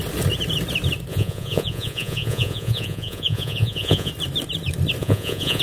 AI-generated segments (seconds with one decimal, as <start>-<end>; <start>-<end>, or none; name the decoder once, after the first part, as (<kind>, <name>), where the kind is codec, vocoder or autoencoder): 1.1-4.1 (vocoder, Vocos); 5.0-5.6